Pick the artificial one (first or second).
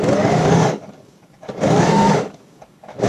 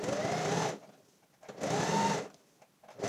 first